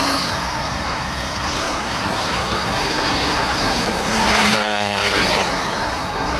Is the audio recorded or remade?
remade